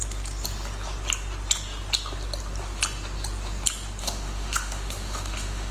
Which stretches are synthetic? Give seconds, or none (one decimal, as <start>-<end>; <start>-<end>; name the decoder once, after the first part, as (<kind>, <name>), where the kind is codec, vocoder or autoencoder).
4.0-5.7 (autoencoder, DAC-VAE)